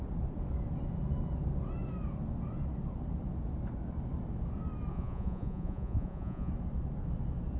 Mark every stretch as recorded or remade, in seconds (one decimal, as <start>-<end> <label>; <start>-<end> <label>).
0.0-4.9 recorded; 4.9-6.5 remade; 6.5-7.6 recorded